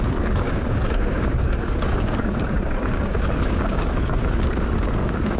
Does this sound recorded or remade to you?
remade